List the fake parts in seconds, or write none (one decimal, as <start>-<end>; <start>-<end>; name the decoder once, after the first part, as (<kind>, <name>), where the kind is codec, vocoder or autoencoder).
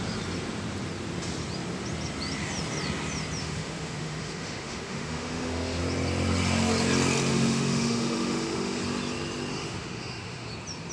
3.4-5.8 (autoencoder, DAC-VAE); 7.3-8.8; 9.5-10.5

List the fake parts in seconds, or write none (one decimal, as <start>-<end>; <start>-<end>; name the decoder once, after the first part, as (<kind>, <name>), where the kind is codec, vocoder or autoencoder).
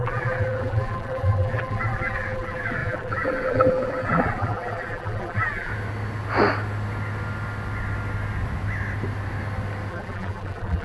0.0-5.7 (vocoder, BigVGAN v2); 9.9-10.8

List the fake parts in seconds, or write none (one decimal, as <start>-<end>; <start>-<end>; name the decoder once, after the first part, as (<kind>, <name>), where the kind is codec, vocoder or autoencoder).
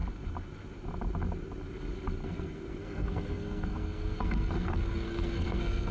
2.2-5.9 (codec, SNAC)